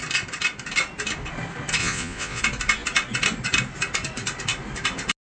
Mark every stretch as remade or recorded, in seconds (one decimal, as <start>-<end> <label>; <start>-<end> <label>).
0.0-1.8 recorded; 1.8-2.4 remade; 2.4-5.4 recorded